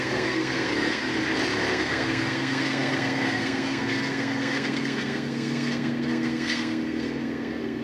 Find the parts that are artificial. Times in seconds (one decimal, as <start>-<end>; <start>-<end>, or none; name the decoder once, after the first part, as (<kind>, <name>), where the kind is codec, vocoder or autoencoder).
0.0-1.1 (codec, SNAC); 1.7-7.8